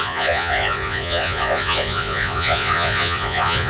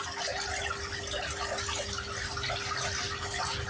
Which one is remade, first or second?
first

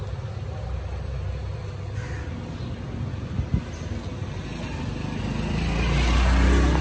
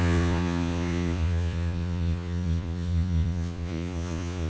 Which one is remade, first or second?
second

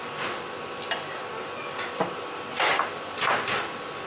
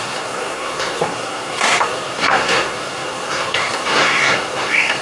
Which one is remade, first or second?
second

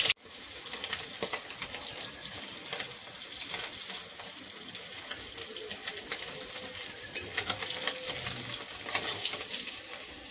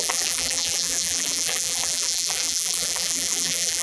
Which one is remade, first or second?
second